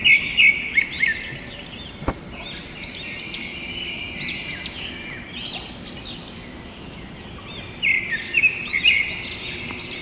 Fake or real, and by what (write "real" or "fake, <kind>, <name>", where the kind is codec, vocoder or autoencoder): real